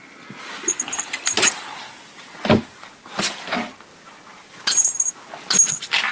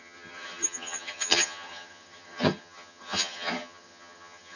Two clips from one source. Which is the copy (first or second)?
second